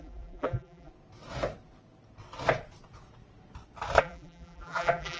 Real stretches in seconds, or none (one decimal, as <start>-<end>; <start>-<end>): 0.9-4.0